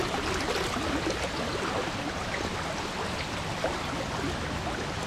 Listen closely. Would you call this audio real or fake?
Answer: real